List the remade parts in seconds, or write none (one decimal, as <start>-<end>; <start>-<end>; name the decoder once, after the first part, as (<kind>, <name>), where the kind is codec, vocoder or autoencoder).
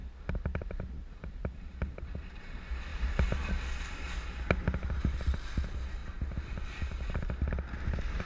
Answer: none